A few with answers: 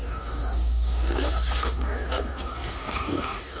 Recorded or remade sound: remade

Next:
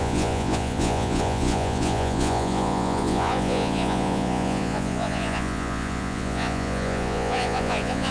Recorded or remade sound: remade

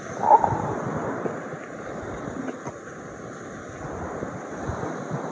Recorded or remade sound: recorded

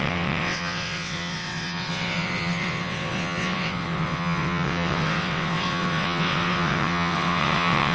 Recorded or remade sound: remade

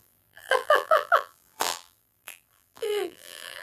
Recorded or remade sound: remade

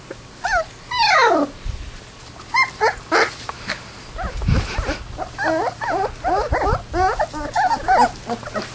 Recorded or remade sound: recorded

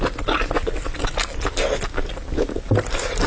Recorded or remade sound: recorded